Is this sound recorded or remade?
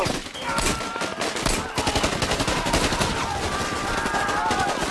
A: recorded